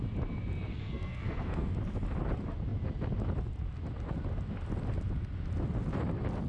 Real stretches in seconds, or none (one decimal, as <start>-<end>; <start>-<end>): 0.0-0.7; 1.7-6.5